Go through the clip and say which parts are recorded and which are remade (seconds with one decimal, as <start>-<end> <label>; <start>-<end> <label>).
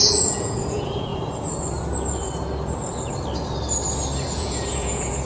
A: 0.0-1.1 remade; 1.1-4.3 recorded; 4.3-5.3 remade